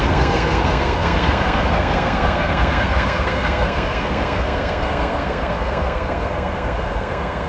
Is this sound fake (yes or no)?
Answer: yes